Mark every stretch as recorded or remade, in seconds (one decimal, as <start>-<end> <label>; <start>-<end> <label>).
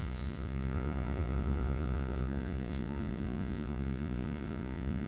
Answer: 0.0-5.1 remade